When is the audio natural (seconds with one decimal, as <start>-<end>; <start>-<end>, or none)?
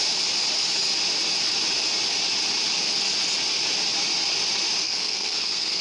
0.0-4.8